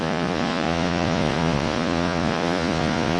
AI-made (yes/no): yes